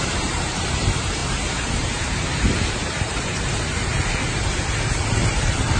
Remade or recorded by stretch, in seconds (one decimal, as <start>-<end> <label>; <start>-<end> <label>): 0.0-3.9 remade; 3.9-5.8 recorded